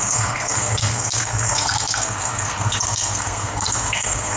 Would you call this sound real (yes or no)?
no